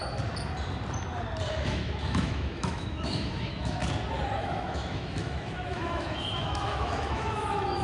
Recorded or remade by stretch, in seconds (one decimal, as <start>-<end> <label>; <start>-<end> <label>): 0.0-1.5 recorded; 1.5-3.8 remade; 3.8-4.4 recorded; 4.4-7.8 remade